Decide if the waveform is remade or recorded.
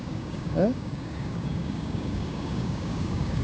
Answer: remade